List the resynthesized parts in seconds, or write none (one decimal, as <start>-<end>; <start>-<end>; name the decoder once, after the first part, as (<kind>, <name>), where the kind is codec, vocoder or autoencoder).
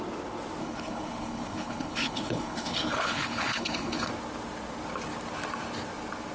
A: 0.6-4.1 (codec, HILCodec)